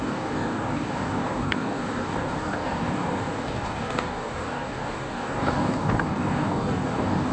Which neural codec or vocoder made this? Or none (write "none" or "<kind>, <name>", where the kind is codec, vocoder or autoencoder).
codec, DAC